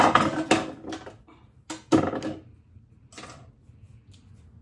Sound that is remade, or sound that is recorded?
recorded